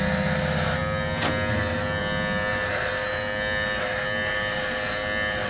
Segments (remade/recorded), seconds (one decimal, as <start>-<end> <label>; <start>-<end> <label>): 0.0-5.5 recorded